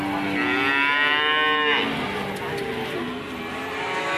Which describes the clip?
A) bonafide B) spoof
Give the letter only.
A